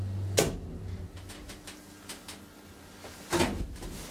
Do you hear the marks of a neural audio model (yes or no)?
no